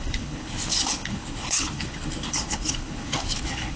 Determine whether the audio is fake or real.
fake